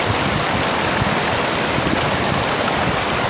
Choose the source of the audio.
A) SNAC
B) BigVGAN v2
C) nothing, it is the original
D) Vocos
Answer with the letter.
C